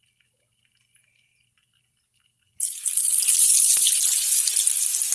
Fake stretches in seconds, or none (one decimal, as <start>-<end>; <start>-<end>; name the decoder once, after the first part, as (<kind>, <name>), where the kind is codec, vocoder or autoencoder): none